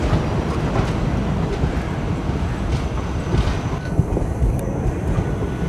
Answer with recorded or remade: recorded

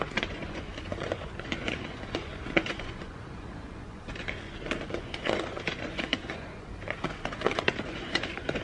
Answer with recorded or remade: remade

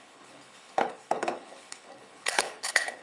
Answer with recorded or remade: remade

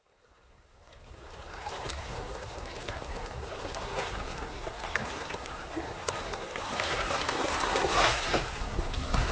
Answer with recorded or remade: remade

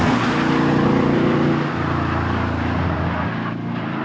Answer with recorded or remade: recorded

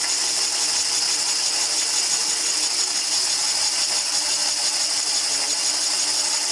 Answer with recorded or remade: recorded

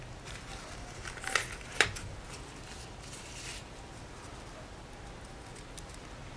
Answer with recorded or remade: recorded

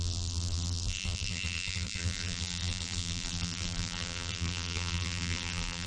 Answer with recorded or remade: remade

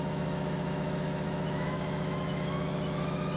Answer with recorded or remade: remade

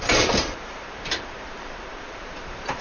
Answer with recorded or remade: remade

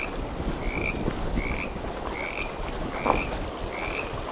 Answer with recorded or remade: recorded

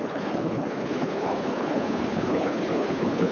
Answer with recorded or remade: remade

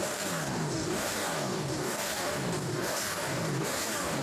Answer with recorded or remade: remade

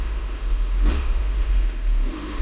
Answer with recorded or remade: remade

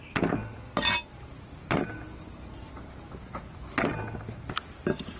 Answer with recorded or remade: recorded